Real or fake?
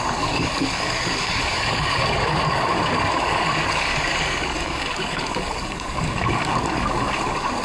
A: fake